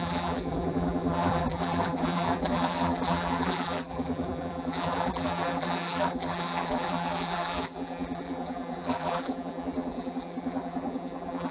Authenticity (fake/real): fake